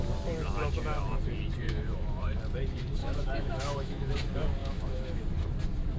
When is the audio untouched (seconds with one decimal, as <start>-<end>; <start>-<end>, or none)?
0.0-1.6; 2.4-3.0; 4.1-4.6; 5.2-6.0